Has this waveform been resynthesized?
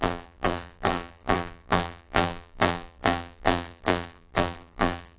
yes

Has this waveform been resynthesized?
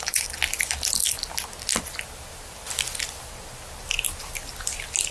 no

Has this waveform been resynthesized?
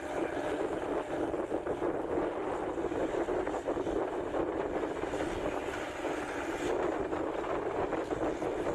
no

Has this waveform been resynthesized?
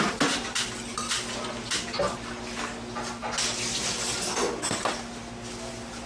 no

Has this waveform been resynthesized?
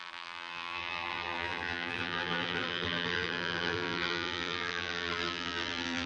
yes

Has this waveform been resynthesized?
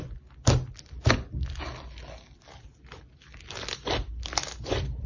no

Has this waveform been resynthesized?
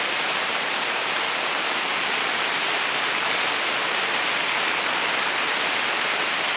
no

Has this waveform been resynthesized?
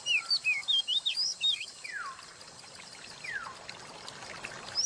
no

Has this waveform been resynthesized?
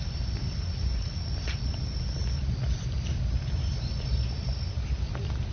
no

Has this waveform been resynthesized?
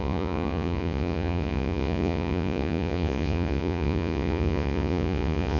yes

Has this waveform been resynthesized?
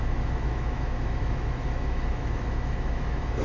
yes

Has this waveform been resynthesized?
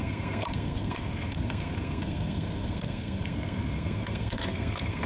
yes